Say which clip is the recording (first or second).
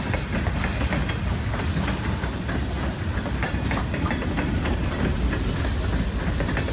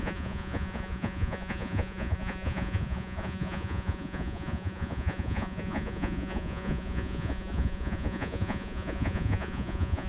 first